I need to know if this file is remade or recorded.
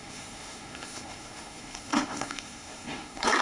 remade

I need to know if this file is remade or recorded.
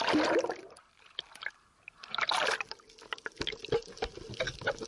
recorded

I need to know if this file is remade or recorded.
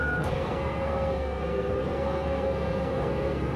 remade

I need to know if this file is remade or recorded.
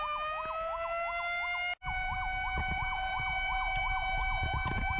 recorded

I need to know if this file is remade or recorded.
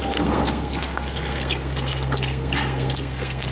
remade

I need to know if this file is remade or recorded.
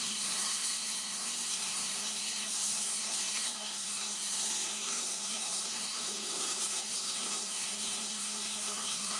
remade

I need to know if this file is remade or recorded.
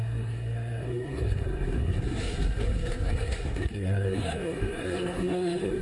remade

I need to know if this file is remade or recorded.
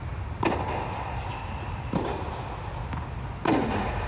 recorded